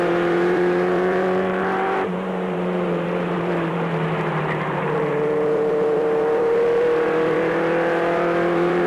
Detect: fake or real fake